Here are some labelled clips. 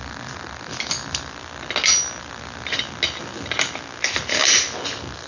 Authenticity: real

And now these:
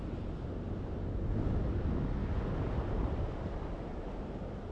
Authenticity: real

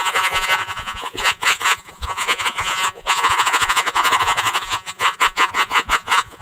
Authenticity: fake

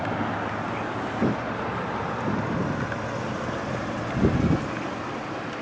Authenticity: real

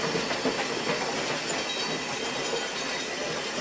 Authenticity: real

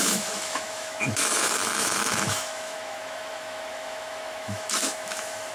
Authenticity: fake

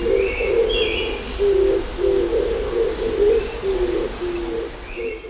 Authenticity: real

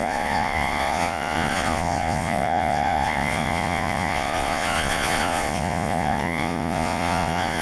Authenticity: fake